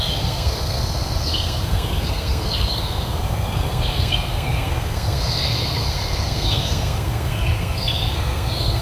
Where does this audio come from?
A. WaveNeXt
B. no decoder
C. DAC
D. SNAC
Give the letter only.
D